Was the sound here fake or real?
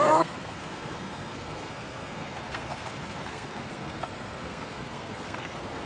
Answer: fake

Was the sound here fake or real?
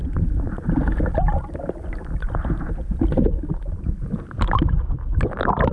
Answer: real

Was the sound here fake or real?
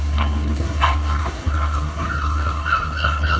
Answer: fake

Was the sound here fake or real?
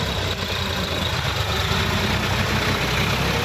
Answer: fake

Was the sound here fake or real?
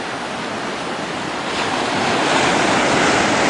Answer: real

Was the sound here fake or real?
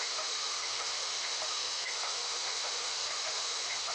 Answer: fake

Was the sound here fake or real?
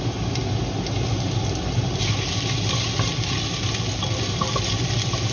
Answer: real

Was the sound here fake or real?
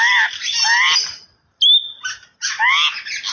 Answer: real